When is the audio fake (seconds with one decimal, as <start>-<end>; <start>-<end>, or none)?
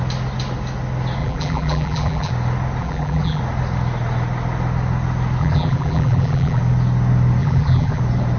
1.2-2.3; 2.8-3.4; 5.4-6.6; 7.4-8.0